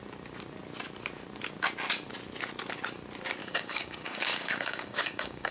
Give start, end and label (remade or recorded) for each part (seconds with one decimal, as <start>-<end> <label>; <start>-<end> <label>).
0.0-3.4 recorded; 3.4-5.5 remade